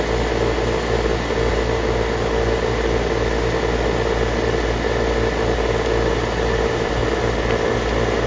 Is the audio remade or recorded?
recorded